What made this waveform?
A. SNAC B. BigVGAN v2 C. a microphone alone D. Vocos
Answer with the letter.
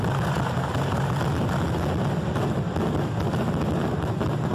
C